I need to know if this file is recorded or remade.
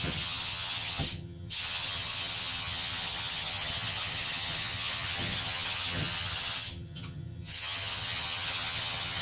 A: remade